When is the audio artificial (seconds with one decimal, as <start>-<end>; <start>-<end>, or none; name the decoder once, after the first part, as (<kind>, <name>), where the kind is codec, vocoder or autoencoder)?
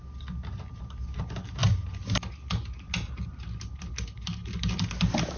none